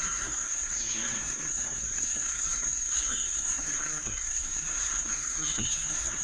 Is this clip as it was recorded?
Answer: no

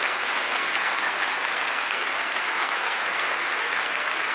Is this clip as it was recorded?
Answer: no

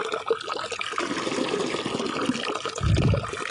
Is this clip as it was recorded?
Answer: yes